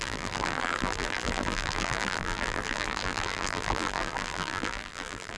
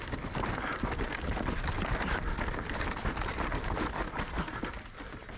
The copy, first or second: first